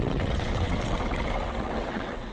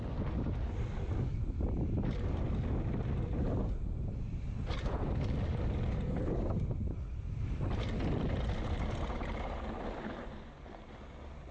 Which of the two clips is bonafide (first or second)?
second